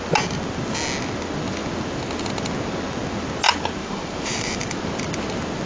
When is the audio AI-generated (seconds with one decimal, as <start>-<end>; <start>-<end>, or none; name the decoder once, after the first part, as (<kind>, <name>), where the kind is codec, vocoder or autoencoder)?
3.8-4.8 (vocoder, BigVGAN v2)